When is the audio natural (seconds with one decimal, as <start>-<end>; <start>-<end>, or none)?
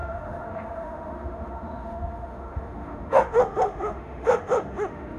none